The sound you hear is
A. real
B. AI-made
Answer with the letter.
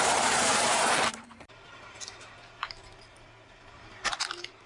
B